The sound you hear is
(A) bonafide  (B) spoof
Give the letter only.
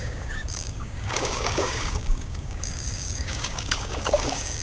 B